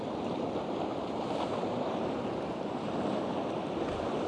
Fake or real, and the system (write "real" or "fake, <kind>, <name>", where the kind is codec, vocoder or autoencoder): real